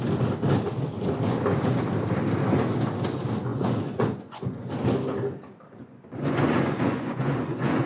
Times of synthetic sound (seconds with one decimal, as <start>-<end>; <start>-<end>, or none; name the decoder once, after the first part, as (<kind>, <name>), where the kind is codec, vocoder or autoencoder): 3.5-4.7 (vocoder, Vocos); 5.8-7.9